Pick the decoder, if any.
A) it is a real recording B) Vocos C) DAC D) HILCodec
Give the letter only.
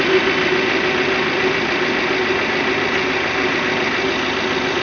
A